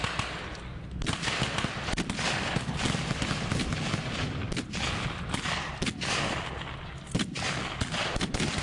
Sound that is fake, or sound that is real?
real